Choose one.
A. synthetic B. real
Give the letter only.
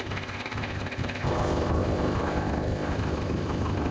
A